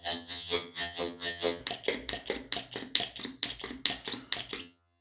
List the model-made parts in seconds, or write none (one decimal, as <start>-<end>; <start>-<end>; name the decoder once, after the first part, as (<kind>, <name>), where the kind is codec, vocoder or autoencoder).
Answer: 0.0-1.6 (vocoder, HiFi-GAN); 4.6-5.0

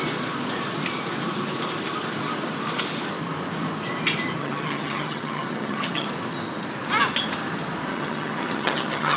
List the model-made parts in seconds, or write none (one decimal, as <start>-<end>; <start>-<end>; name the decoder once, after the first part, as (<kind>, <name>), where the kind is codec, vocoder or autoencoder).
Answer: 4.4-6.1 (vocoder, HiFi-GAN); 7.9-9.2

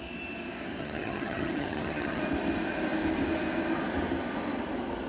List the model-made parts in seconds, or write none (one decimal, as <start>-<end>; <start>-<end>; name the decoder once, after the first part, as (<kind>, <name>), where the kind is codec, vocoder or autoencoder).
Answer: 0.8-2.2 (vocoder, HiFi-GAN)

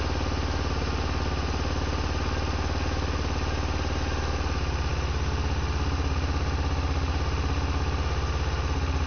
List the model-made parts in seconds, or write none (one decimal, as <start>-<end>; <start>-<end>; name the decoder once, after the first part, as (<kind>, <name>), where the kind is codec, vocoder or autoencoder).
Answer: none

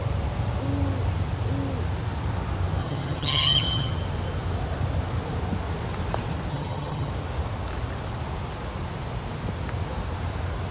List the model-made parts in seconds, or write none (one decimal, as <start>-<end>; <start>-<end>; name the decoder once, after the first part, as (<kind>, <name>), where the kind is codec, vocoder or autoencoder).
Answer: 2.8-3.9 (vocoder, HiFi-GAN); 6.5-7.1

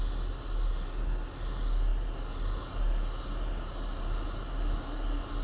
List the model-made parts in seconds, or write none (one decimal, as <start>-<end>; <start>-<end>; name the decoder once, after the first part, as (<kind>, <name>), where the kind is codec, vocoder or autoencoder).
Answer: none

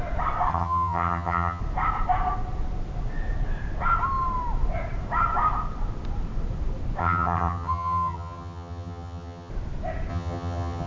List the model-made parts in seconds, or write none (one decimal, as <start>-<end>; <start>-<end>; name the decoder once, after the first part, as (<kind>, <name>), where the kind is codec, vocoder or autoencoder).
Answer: 0.5-1.6 (vocoder, HiFi-GAN); 7.0-9.5; 10.1-10.9